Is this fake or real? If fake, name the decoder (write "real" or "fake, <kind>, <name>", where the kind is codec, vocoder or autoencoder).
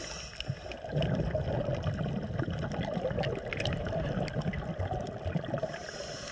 real